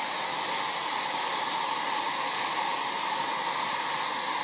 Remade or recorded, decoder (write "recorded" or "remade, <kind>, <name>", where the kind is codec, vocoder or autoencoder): recorded